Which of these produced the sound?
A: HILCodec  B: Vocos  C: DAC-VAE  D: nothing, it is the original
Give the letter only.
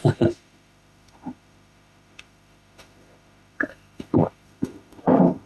C